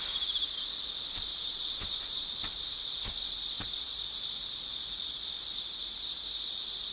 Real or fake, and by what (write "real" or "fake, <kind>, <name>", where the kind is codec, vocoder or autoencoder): real